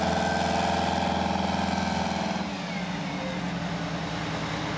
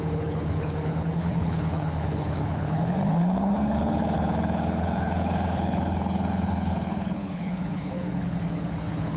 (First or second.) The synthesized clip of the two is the second